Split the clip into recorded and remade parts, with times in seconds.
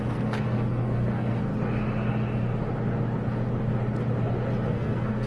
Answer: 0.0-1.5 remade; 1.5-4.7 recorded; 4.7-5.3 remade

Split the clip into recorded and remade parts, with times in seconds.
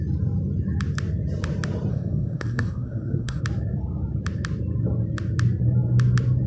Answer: 0.0-1.9 recorded; 1.9-3.4 remade; 3.4-6.5 recorded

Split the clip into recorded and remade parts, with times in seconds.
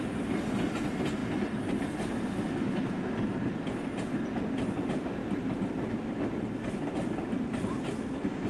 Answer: 0.0-8.5 recorded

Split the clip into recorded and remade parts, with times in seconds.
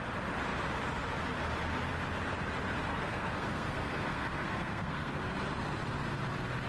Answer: 0.0-2.9 recorded; 2.9-5.1 remade; 5.1-6.7 recorded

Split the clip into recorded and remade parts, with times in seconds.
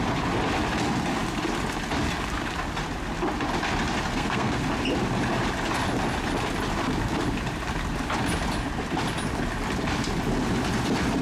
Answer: 0.0-4.1 recorded; 4.1-4.6 remade; 4.6-11.2 recorded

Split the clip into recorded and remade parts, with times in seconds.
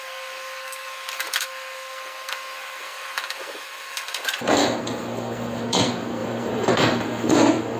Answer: 0.0-7.8 remade